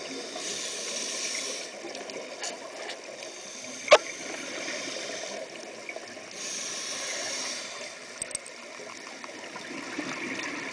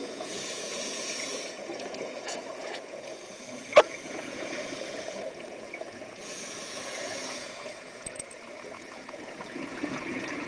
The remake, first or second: second